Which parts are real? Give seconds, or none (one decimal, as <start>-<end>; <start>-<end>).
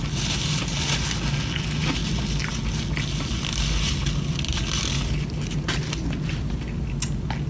0.0-7.5